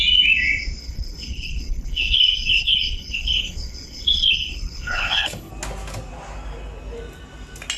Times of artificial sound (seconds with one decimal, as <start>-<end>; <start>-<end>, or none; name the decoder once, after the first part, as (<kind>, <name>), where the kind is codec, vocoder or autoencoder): 0.8-5.5 (codec, HILCodec)